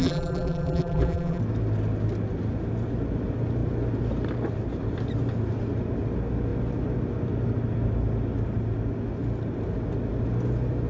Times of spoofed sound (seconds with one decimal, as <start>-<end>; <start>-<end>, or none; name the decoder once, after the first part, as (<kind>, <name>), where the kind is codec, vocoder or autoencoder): 0.0-1.4 (vocoder, BigVGAN v2)